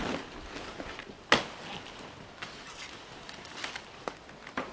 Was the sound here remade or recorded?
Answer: recorded